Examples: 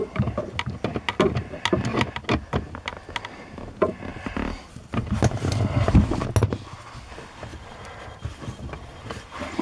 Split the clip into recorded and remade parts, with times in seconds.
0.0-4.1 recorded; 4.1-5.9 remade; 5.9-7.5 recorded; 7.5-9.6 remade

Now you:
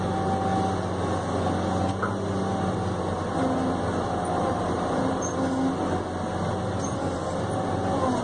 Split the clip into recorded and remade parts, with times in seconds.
0.0-4.4 recorded; 4.4-5.4 remade; 5.4-8.2 recorded

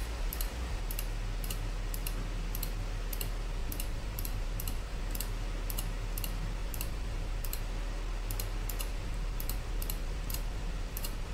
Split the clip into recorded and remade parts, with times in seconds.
0.0-0.8 remade; 0.8-3.6 recorded; 3.6-5.0 remade; 5.0-6.6 recorded; 6.6-7.6 remade; 7.6-8.9 recorded; 8.9-11.3 remade

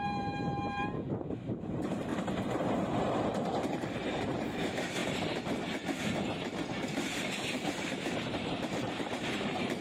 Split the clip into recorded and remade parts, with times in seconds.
0.0-2.1 remade; 2.1-3.0 recorded; 3.0-9.8 remade

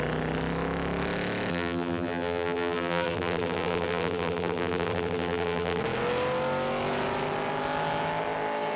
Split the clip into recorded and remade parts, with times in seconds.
0.0-1.5 recorded; 1.5-5.8 remade; 5.8-8.8 recorded

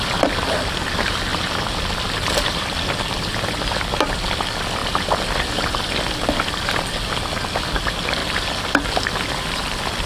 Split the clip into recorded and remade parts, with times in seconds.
0.0-10.1 recorded

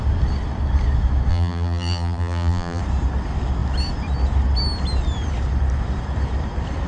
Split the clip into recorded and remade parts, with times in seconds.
0.0-1.3 recorded; 1.3-2.8 remade; 2.8-6.9 recorded